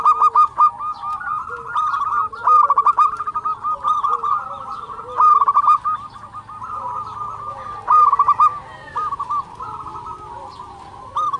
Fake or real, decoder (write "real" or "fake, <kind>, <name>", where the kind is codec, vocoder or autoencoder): real